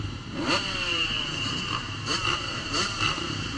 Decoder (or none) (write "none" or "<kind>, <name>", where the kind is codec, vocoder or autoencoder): vocoder, BigVGAN v2